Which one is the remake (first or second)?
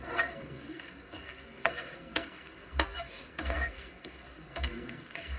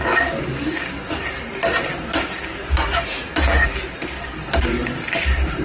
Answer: first